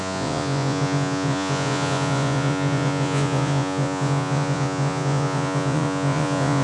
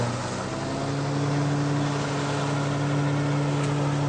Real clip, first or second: second